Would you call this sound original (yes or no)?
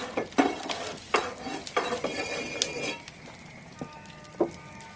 yes